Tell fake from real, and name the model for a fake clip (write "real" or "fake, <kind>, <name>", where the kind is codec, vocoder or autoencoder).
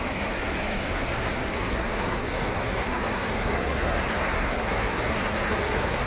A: fake, codec, SNAC